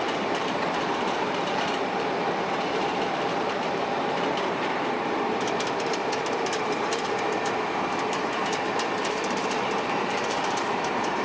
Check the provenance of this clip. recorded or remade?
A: remade